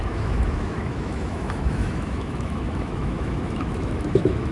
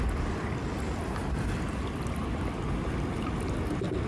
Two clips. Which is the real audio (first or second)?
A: second